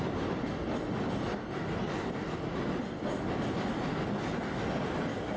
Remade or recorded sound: recorded